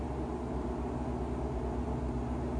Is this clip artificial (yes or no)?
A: no